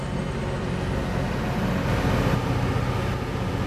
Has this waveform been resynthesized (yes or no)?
no